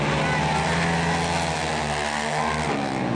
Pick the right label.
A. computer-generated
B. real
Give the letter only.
B